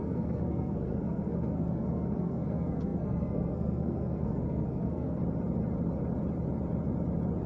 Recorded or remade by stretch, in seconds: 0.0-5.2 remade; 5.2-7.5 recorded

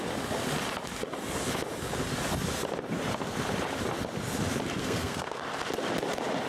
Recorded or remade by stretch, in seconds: 0.0-4.8 recorded; 4.8-5.4 remade; 5.4-6.5 recorded